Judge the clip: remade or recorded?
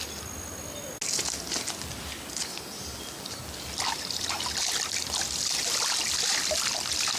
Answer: recorded